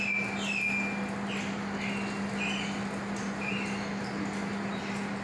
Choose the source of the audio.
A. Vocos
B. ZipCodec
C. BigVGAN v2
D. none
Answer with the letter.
D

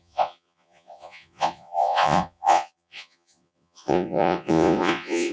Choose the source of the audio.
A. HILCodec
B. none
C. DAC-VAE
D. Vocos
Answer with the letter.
D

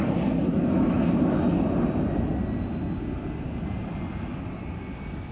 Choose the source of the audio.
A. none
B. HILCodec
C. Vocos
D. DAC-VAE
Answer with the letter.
A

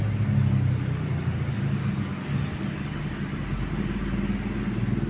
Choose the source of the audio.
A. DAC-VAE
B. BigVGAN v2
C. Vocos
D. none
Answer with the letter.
D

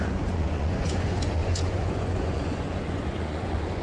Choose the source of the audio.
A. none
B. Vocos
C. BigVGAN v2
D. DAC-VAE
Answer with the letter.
B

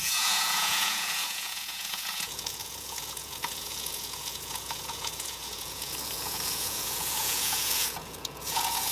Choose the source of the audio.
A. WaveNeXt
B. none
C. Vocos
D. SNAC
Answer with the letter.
C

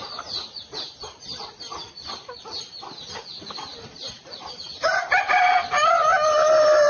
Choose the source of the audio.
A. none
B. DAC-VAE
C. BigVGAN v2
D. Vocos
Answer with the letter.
A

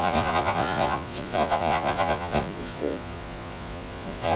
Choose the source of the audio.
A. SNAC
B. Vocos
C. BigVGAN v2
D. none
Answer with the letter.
B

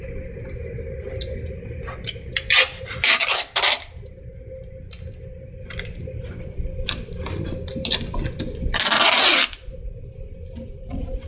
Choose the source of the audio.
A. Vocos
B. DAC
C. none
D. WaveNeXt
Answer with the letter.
C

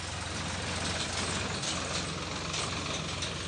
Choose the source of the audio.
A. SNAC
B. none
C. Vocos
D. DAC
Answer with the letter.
B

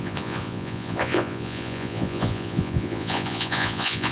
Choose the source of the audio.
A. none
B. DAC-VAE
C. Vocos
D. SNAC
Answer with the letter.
C